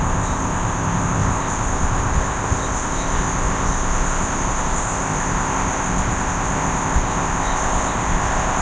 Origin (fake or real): fake